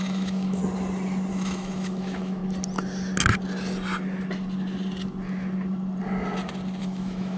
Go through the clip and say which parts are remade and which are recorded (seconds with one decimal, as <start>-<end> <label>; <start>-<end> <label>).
0.0-0.6 remade; 0.6-1.3 recorded; 1.3-2.4 remade; 2.4-6.8 recorded; 6.8-7.4 remade